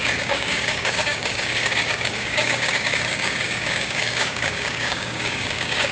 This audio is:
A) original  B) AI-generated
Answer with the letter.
B